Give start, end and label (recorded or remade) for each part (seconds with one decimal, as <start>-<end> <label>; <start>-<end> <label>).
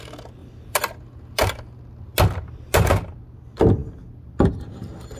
0.0-5.2 recorded